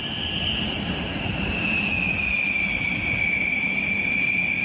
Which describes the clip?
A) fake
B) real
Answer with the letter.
B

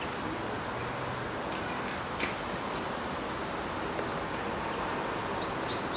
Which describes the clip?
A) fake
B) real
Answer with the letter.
B